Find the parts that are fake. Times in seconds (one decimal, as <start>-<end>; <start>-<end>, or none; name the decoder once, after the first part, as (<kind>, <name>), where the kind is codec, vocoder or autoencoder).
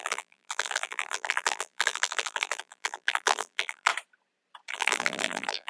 0.0-3.9 (vocoder, BigVGAN v2); 4.7-5.7